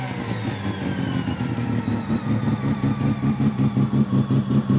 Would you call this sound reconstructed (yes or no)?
no